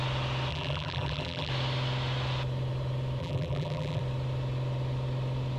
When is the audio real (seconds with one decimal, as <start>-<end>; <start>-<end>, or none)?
0.0-0.5; 1.5-3.2; 4.0-5.6